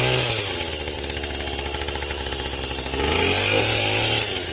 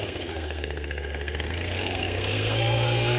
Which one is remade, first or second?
second